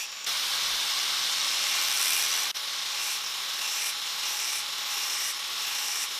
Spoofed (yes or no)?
no